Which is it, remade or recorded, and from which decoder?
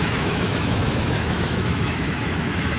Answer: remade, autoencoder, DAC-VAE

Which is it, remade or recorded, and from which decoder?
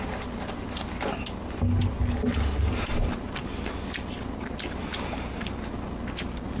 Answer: recorded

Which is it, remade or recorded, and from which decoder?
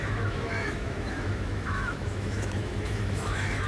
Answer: remade, autoencoder, DAC-VAE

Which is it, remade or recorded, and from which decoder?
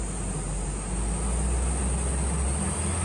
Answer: recorded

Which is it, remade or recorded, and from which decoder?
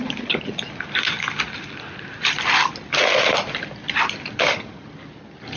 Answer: recorded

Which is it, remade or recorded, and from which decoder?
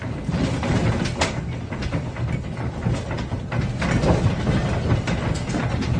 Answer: recorded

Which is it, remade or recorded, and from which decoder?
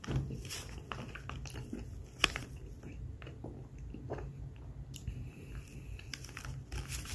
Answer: recorded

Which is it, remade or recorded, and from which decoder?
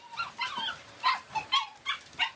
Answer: recorded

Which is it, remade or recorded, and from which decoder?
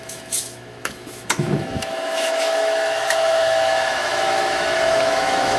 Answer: remade, autoencoder, DAC-VAE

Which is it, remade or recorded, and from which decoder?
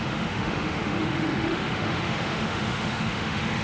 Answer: remade, autoencoder, DAC-VAE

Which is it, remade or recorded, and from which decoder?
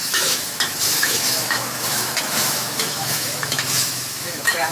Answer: remade, autoencoder, DAC-VAE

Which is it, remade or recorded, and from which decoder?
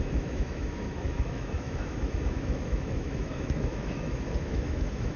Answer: remade, autoencoder, DAC-VAE